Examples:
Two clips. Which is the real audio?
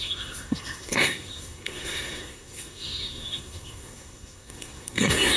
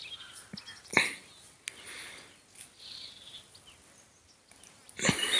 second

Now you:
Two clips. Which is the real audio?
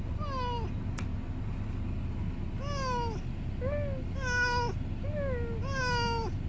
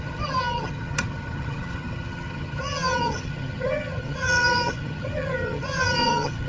first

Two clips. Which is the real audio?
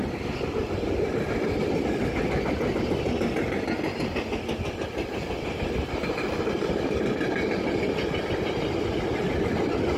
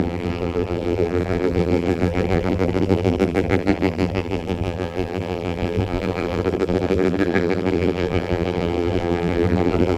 first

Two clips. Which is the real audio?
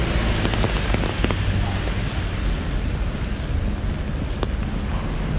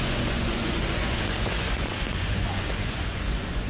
first